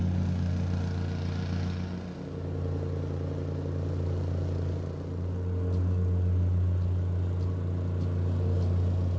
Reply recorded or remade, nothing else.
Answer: recorded